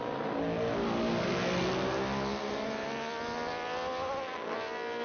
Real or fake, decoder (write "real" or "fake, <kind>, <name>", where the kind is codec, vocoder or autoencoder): real